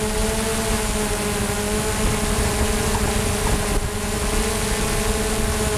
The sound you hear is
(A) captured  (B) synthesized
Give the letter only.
A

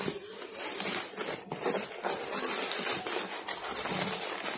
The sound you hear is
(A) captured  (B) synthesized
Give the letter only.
B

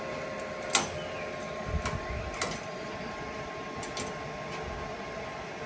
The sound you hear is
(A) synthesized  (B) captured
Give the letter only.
B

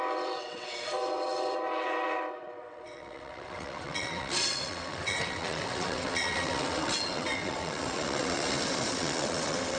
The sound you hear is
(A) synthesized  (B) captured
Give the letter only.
A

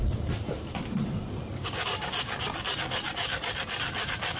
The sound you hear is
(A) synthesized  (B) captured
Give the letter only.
A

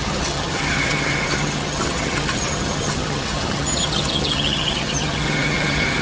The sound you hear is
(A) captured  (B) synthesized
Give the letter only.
B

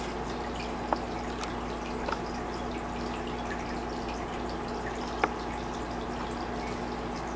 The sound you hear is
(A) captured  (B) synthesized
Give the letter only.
A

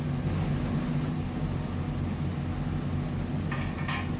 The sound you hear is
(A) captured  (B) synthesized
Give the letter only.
A